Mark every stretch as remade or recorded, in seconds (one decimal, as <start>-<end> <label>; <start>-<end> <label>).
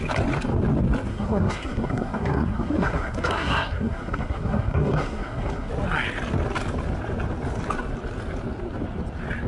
0.0-1.1 recorded; 1.1-5.7 remade; 5.7-9.5 recorded